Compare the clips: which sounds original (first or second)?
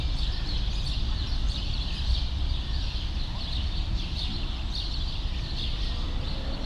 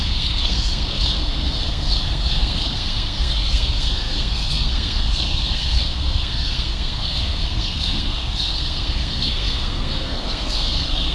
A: first